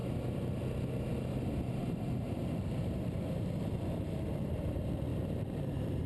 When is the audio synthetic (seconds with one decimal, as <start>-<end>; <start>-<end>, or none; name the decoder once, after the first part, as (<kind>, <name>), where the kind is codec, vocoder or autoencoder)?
1.8-4.6 (vocoder, BigVGAN v2); 5.1-6.1